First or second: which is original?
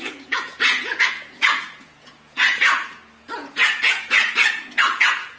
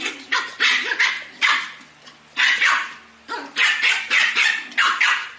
second